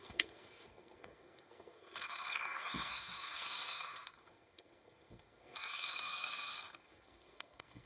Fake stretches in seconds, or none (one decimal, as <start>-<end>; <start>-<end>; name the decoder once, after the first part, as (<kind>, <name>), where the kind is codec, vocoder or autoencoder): 0.0-7.9 (codec, SNAC)